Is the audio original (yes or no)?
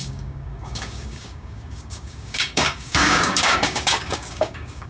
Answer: no